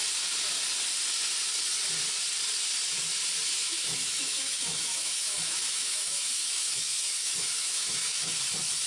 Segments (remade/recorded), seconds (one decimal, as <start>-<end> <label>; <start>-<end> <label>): 0.0-3.6 recorded; 3.6-8.4 remade; 8.4-8.9 recorded